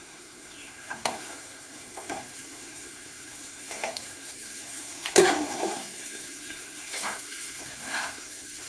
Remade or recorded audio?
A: remade